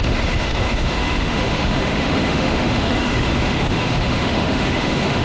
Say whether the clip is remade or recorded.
remade